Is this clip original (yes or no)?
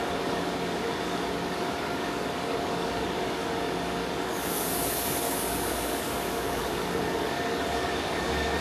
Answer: no